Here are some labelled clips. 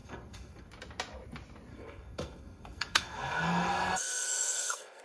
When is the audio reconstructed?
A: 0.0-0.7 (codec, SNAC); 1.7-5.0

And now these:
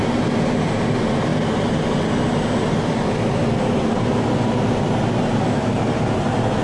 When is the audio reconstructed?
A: none

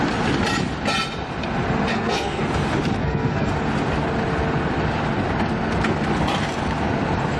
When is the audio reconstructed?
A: 1.9-2.4 (codec, SNAC); 3.0-3.5